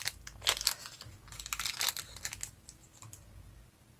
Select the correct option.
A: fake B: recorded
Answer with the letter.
B